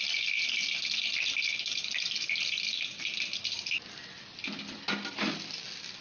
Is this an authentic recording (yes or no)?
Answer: yes